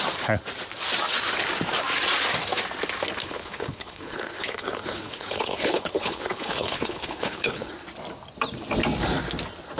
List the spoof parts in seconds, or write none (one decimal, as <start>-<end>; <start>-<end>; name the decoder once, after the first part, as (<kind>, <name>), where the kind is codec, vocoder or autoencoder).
3.2-7.7 (codec, HILCodec)